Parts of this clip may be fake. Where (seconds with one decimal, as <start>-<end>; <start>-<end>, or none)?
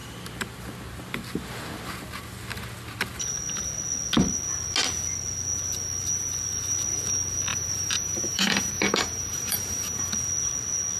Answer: 7.5-10.1